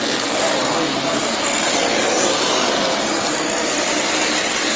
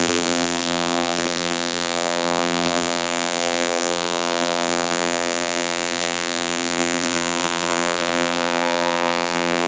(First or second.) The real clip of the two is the first